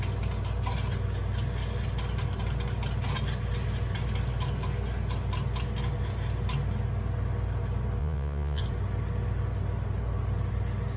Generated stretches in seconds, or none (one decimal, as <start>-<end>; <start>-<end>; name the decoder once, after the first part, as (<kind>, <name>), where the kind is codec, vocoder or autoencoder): 8.0-8.6 (vocoder, Vocos)